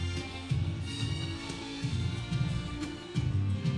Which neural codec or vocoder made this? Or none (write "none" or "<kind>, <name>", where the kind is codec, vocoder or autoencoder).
codec, SNAC